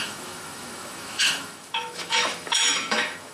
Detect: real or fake fake